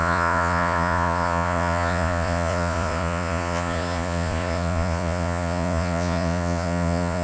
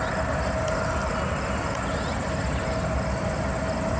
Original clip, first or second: second